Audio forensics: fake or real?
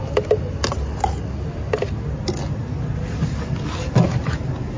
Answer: real